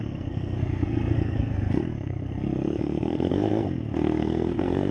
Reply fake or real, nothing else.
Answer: fake